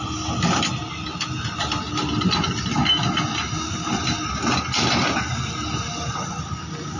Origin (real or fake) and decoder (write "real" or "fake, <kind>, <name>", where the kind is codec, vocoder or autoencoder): real